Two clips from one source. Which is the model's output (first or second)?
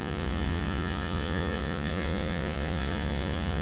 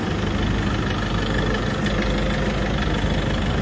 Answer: first